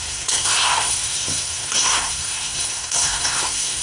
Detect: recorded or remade remade